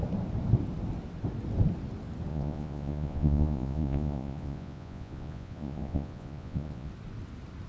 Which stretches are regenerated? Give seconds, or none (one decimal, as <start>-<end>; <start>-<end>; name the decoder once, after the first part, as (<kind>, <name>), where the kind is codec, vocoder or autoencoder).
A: 2.3-6.9 (vocoder, Vocos)